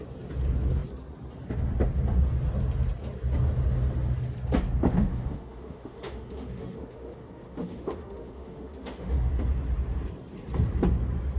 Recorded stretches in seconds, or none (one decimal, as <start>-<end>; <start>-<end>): 0.0-4.9; 9.3-11.4